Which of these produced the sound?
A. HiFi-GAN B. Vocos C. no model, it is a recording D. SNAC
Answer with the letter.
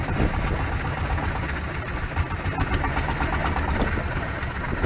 C